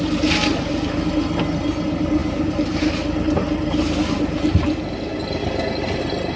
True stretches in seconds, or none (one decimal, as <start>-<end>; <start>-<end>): 0.0-6.4